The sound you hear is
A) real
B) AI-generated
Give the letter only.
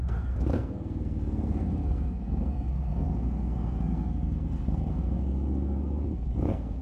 B